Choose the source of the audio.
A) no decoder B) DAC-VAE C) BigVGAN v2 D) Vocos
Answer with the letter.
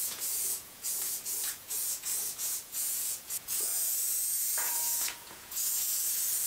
D